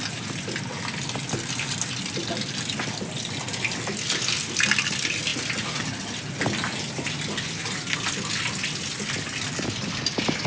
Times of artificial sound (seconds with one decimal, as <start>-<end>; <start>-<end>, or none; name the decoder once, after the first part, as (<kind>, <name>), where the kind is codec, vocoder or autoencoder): none